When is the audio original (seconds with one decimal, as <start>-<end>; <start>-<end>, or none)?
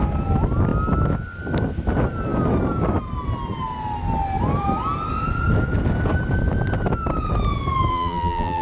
0.0-7.9